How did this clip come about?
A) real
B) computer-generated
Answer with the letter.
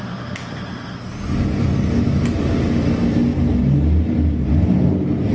A